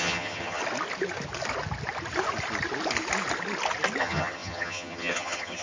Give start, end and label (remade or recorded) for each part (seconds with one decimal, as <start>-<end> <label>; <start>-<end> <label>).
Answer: 0.0-0.6 remade; 0.6-4.0 recorded; 4.0-5.6 remade